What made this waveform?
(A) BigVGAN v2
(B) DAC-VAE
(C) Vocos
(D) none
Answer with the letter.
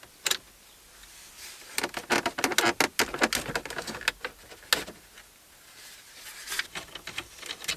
D